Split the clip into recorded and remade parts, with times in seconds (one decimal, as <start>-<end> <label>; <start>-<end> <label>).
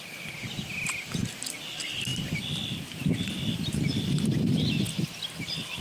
0.0-2.1 recorded; 2.1-4.2 remade; 4.2-5.8 recorded